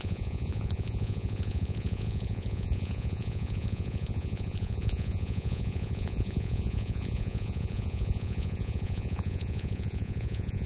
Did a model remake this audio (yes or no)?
yes